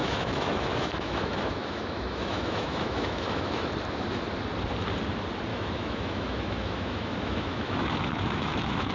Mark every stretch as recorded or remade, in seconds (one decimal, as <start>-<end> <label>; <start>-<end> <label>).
0.0-3.7 remade; 3.7-5.5 recorded; 5.5-8.9 remade